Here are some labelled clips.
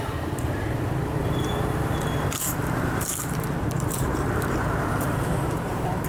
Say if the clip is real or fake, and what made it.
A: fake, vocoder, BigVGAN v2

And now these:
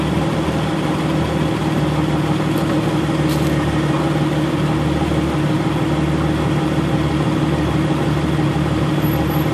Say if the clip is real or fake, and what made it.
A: real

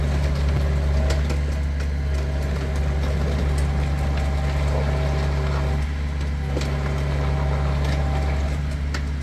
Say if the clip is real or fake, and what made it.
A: real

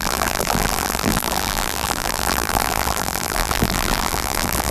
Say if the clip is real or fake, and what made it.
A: fake, vocoder, BigVGAN v2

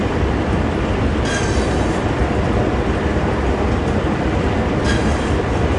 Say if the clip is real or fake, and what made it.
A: fake, vocoder, BigVGAN v2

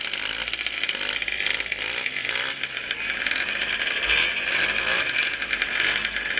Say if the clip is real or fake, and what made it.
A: real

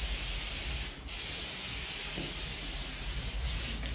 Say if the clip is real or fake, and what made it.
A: fake, vocoder, BigVGAN v2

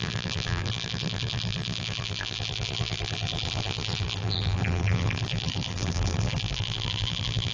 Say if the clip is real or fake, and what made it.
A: fake, vocoder, BigVGAN v2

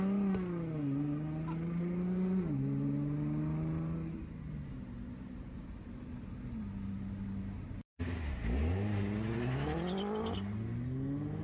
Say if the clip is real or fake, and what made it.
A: real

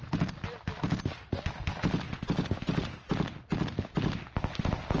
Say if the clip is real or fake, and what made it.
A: real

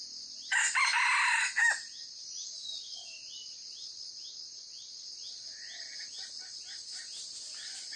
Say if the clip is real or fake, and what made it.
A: real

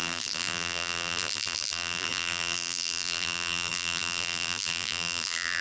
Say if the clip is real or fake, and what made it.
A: fake, vocoder, BigVGAN v2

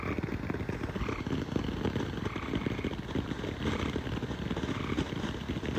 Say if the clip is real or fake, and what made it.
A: real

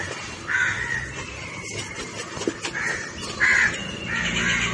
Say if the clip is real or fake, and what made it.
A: real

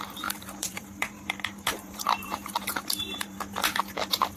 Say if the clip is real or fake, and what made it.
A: fake, vocoder, BigVGAN v2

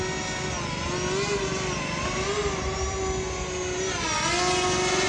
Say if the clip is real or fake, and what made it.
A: real